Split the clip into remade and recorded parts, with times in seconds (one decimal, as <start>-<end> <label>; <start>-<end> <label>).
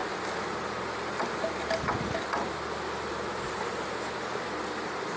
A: 0.0-5.2 recorded